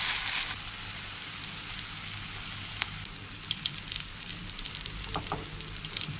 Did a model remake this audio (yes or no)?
no